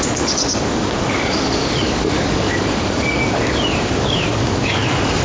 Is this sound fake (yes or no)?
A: yes